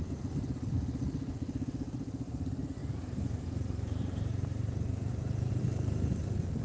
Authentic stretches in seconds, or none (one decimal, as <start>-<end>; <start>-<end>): 0.0-2.8; 5.5-6.6